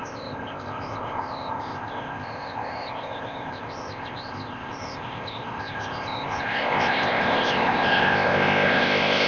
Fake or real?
fake